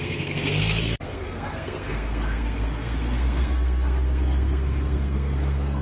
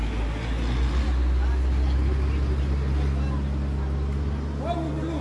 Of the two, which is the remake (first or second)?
first